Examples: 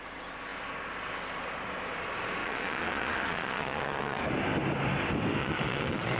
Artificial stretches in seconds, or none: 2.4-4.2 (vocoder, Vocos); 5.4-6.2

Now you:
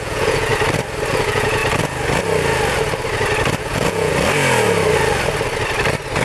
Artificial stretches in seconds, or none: 0.0-0.5 (vocoder, Vocos); 1.1-1.6; 3.6-4.1

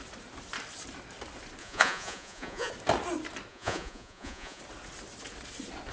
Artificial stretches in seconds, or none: 1.6-2.7 (vocoder, Vocos); 3.5-4.6